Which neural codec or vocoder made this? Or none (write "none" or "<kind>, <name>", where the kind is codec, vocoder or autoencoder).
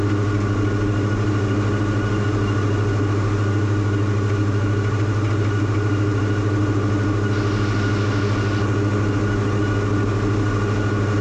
none